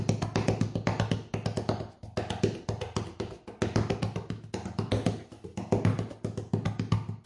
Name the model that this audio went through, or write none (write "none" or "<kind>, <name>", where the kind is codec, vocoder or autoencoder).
none